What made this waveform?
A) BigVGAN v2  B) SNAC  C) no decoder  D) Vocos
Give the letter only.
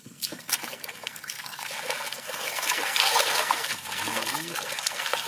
B